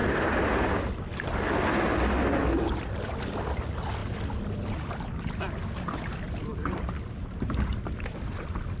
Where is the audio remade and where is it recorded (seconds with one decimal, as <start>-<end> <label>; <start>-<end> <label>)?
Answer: 0.0-8.8 recorded